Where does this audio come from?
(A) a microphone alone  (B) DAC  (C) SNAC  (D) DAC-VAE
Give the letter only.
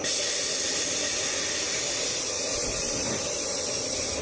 A